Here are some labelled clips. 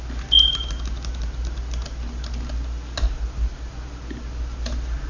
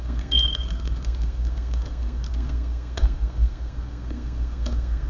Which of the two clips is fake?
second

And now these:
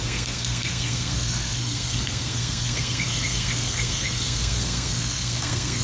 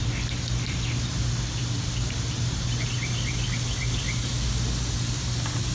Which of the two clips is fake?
first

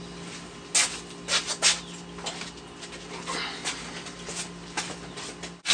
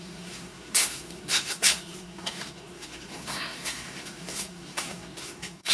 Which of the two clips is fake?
second